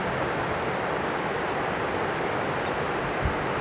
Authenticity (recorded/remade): recorded